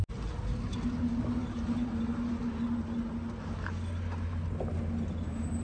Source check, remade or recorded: recorded